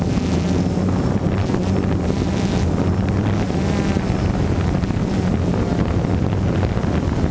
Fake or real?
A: real